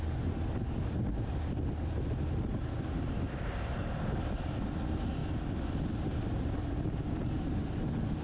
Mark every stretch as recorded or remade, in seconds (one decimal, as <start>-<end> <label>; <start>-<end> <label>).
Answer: 0.0-8.2 recorded